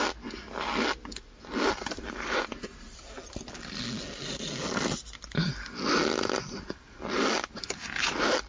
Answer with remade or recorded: recorded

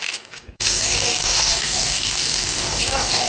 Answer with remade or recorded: remade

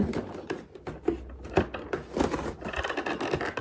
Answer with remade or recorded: recorded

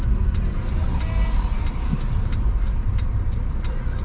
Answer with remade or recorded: recorded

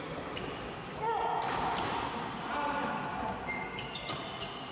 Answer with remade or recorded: recorded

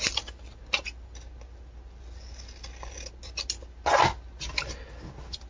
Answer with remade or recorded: recorded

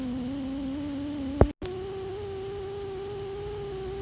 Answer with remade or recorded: recorded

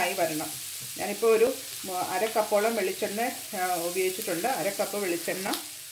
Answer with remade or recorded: recorded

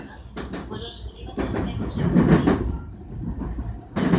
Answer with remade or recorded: recorded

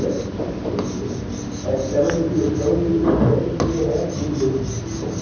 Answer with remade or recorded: recorded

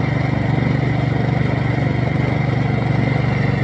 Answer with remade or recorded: recorded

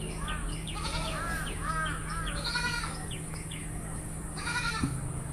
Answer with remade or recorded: remade